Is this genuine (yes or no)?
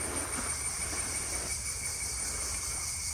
yes